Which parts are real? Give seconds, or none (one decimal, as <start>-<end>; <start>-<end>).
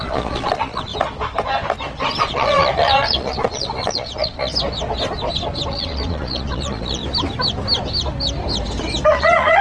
0.9-2.2; 4.5-5.7; 7.0-9.1